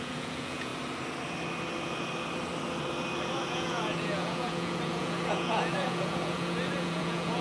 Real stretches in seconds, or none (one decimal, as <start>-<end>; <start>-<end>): 0.7-3.5